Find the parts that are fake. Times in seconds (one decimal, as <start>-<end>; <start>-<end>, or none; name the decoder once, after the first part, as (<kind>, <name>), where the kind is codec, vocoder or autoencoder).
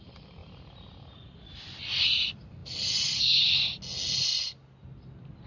none